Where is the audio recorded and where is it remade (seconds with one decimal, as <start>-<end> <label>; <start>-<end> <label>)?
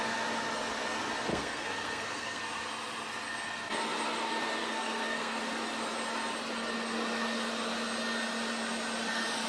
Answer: 0.0-1.3 recorded; 1.3-2.4 remade; 2.4-4.6 recorded; 4.6-5.4 remade; 5.4-9.5 recorded